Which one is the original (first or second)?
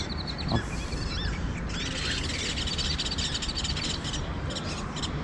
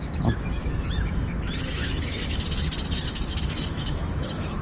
first